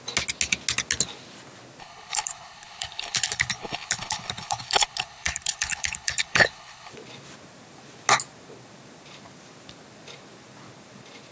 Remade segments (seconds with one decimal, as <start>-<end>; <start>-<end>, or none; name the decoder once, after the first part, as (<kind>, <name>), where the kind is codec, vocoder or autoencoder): 1.8-6.9 (codec, HILCodec)